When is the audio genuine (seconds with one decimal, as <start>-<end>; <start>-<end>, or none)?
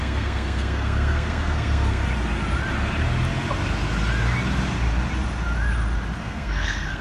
2.0-6.2